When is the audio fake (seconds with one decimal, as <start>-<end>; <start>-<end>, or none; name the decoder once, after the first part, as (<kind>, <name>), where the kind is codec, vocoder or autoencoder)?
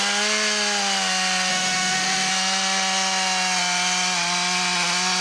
1.5-2.3 (autoencoder, DAC-VAE)